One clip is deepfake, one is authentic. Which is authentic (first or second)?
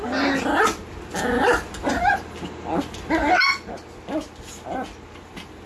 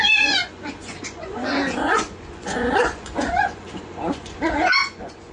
first